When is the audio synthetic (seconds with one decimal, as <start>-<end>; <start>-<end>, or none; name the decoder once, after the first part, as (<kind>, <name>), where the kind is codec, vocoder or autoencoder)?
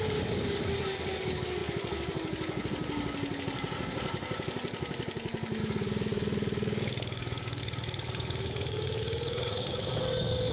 0.0-10.5 (codec, DAC)